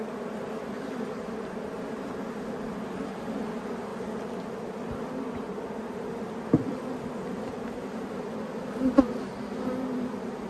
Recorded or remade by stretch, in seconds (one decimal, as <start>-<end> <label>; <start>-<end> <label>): 0.0-10.5 recorded